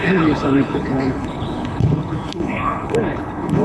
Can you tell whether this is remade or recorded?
remade